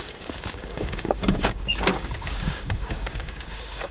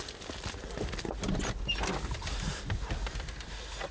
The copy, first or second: first